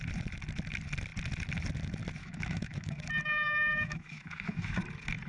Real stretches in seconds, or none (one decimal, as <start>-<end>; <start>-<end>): 0.0-2.2; 3.0-3.7; 4.8-5.3